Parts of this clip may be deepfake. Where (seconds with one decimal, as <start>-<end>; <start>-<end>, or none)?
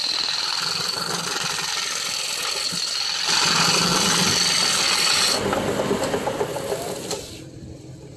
6.5-8.2